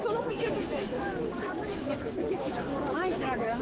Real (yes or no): no